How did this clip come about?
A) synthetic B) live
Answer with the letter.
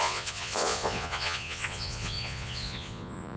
A